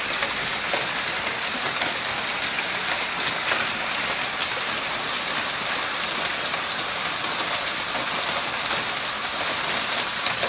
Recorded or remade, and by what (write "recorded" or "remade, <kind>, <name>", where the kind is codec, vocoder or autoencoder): recorded